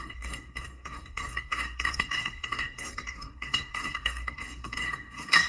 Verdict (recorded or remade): remade